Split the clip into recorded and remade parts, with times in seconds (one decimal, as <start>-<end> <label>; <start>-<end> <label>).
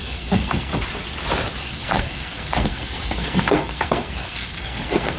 0.0-0.7 remade; 0.7-1.6 recorded; 1.6-5.2 remade